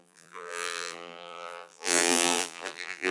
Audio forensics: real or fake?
fake